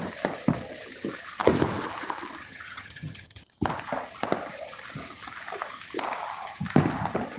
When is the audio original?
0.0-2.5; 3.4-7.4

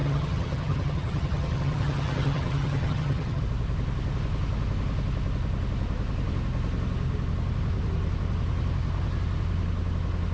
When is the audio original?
3.4-10.3